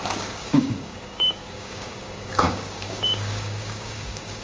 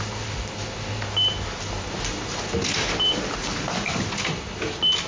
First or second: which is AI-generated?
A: first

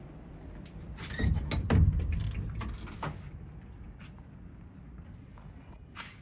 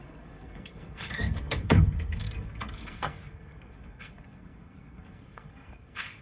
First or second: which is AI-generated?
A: second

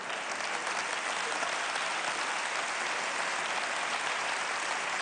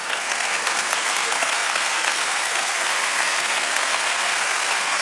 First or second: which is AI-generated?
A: second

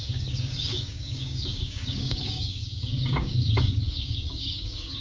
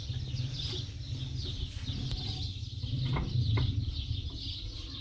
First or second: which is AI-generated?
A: first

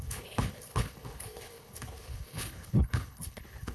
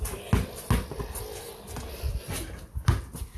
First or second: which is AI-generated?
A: first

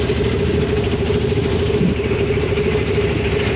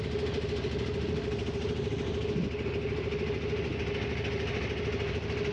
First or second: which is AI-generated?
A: first